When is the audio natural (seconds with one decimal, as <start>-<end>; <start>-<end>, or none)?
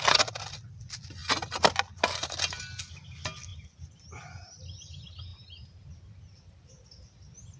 0.0-3.5; 4.1-5.3; 6.7-7.6